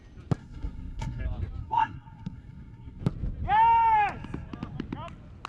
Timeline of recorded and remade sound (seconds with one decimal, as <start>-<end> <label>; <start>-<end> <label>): 0.0-0.4 recorded; 0.4-1.2 remade; 1.2-1.6 recorded; 1.6-3.0 remade; 3.0-5.5 recorded